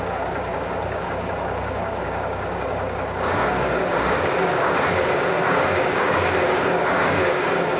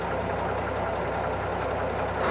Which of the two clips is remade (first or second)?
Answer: first